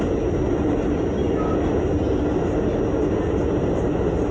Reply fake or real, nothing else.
real